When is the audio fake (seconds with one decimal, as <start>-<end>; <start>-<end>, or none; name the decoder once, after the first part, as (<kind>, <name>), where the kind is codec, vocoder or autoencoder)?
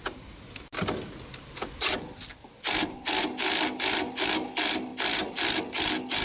none